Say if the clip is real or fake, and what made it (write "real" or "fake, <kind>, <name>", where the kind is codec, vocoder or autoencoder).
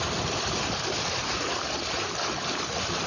real